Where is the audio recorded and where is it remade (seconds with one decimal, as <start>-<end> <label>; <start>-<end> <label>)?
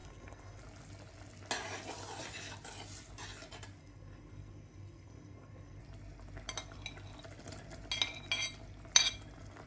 0.0-0.6 remade; 0.6-3.8 recorded; 3.8-5.8 remade; 5.8-9.7 recorded